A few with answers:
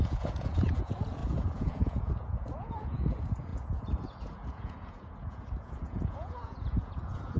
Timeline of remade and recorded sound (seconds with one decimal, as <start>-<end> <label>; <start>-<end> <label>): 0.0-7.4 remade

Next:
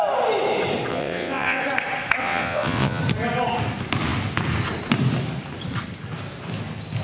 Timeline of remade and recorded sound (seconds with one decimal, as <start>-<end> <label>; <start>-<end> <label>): 0.0-0.9 recorded; 0.9-1.6 remade; 1.6-2.2 recorded; 2.2-3.0 remade; 3.0-7.0 recorded

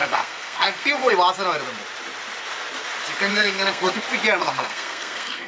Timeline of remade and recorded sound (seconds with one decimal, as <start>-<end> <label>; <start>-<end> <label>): 0.0-1.1 remade; 1.1-3.3 recorded; 3.3-4.0 remade; 4.0-4.4 recorded; 4.4-5.5 remade